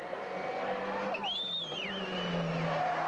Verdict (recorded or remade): recorded